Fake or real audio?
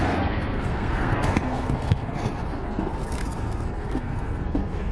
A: fake